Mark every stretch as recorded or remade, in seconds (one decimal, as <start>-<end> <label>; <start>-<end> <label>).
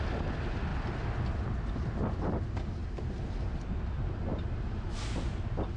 0.0-5.8 recorded